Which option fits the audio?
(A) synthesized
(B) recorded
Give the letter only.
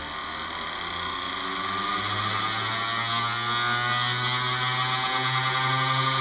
B